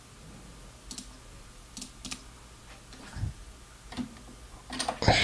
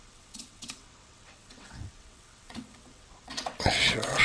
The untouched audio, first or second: first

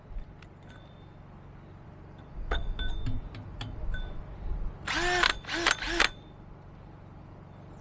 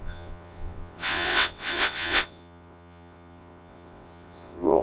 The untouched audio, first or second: first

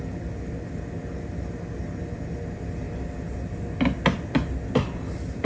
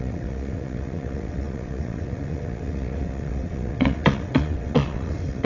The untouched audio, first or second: first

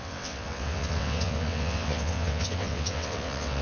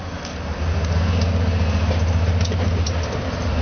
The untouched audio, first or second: second